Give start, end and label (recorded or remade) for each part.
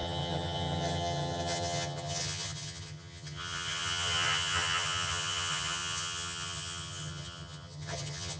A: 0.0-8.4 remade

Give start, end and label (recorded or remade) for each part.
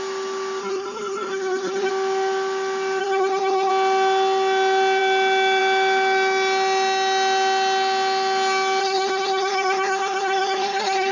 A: 0.0-0.6 recorded; 0.6-1.9 remade; 1.9-3.0 recorded; 3.0-3.7 remade; 3.7-8.8 recorded; 8.8-11.1 remade